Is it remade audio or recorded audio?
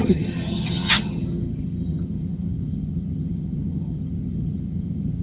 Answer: remade